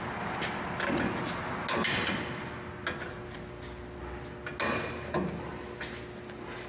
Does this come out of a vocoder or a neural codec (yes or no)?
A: no